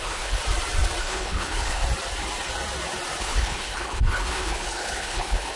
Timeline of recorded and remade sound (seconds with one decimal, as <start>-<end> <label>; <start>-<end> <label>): 0.0-0.4 remade; 0.4-1.0 recorded; 1.0-1.8 remade; 1.8-3.2 recorded; 3.2-5.6 remade